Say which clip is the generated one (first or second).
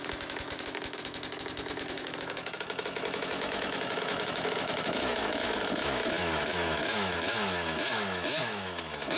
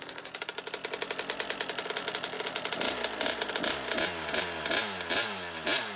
first